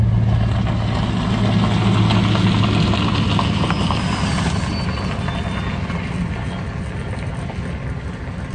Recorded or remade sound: recorded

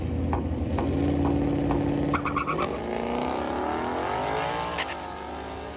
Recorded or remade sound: recorded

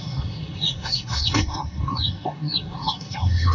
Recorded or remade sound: remade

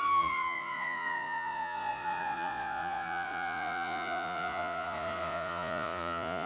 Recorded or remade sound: remade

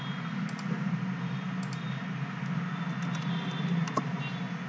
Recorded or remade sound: recorded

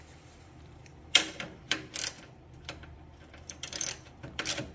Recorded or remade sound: remade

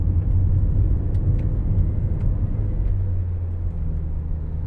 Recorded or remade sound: recorded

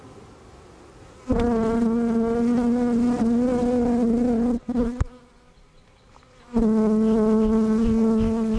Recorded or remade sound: recorded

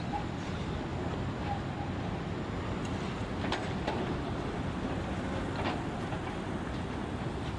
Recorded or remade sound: recorded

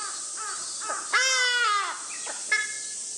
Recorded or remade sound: recorded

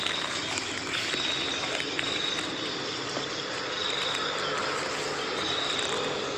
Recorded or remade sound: recorded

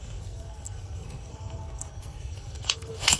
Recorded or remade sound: remade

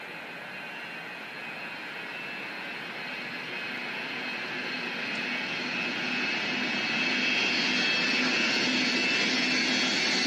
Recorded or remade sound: recorded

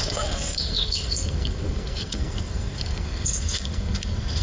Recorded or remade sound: remade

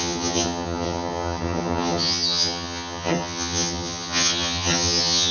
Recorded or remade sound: remade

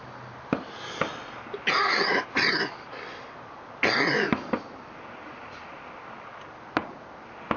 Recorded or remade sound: recorded